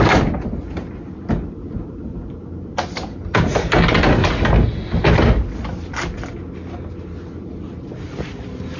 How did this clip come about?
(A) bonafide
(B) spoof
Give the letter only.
A